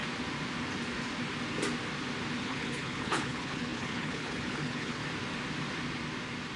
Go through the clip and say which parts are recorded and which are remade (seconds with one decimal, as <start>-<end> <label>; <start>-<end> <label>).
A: 0.0-2.4 recorded; 2.4-5.0 remade; 5.0-6.6 recorded